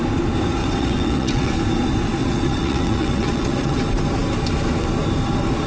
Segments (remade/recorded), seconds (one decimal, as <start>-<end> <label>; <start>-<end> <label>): 0.0-0.6 recorded; 0.6-1.5 remade; 1.5-2.2 recorded; 2.2-3.8 remade; 3.8-5.7 recorded